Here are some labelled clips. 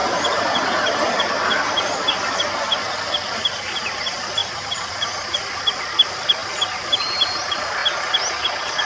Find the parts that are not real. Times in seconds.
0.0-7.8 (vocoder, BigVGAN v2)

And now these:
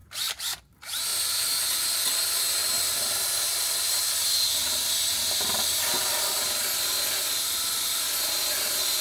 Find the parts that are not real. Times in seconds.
1.1-1.6 (vocoder, BigVGAN v2); 2.6-6.3

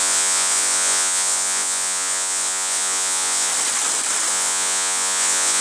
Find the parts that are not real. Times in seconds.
0.0-3.5 (vocoder, Vocos); 4.3-5.6

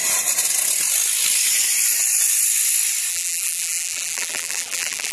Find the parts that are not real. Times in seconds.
3.1-5.1 (vocoder, BigVGAN v2)

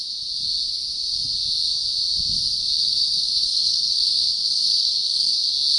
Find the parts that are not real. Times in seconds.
2.8-5.3 (codec, SNAC)

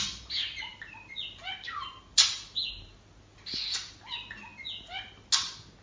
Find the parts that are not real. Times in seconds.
none

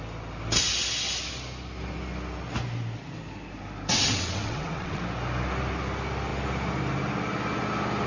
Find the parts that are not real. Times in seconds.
3.9-5.0 (vocoder, WaveNeXt)